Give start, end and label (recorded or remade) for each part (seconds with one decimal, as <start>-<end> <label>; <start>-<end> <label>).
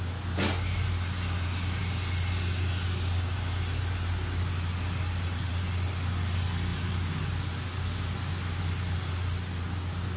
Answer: 0.0-10.2 recorded